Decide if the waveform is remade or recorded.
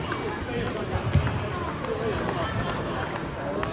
recorded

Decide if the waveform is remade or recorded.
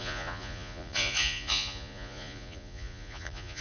remade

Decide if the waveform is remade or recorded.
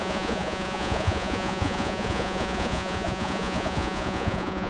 remade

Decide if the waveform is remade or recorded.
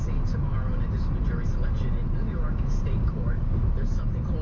recorded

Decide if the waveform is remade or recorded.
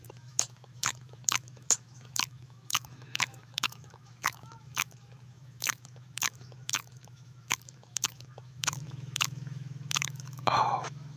remade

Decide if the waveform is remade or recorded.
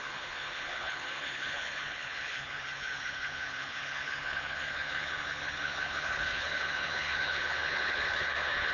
remade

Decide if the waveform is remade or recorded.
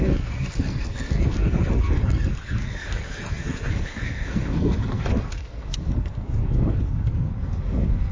remade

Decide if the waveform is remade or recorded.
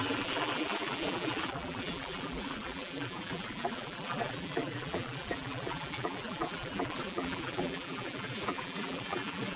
remade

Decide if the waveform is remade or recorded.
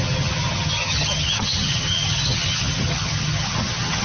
remade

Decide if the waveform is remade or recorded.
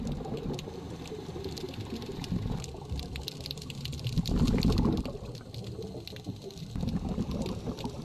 recorded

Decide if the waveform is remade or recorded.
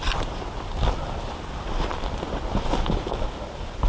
recorded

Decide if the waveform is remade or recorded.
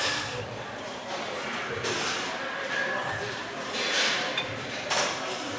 remade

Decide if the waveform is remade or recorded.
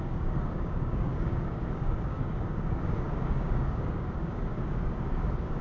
remade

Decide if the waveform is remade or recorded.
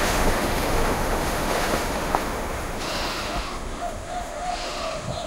remade